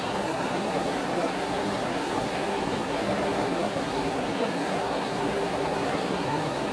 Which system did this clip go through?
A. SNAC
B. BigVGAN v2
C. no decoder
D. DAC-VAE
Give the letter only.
A